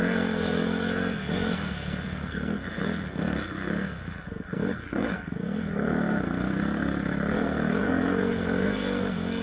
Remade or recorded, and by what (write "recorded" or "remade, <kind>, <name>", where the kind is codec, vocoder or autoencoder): remade, codec, SNAC